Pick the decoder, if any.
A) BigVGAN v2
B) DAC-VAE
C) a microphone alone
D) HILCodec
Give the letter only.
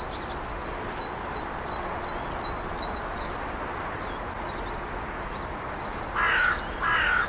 C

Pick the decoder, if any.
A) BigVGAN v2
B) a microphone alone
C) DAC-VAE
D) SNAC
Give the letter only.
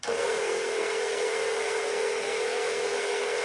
D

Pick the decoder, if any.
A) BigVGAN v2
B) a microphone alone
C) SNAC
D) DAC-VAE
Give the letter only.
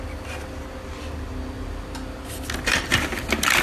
B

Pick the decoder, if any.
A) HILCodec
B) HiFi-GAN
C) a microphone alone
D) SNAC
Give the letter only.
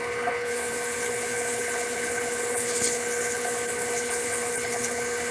A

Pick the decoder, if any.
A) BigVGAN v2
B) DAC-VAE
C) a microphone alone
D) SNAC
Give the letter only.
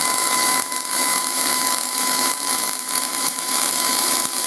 B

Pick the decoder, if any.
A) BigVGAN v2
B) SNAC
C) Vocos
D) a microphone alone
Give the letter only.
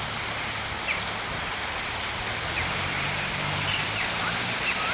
D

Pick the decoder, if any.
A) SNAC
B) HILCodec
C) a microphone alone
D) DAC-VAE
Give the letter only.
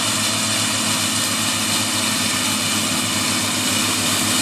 C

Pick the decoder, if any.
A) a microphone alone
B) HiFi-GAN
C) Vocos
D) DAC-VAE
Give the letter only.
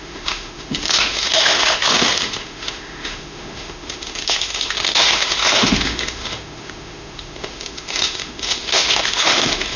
D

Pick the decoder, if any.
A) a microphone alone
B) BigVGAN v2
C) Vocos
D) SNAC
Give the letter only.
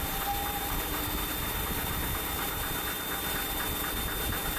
A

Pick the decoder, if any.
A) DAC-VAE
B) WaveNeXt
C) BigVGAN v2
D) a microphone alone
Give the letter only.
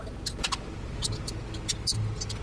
D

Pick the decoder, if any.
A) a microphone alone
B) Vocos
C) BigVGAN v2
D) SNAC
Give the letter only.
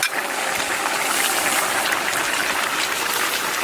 A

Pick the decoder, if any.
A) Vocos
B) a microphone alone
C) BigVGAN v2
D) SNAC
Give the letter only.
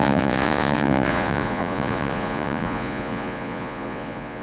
A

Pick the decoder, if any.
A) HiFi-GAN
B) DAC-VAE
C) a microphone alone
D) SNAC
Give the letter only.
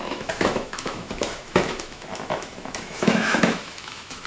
B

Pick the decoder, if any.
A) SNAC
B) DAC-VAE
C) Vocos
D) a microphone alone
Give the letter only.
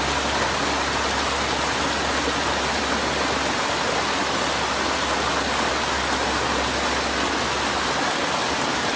D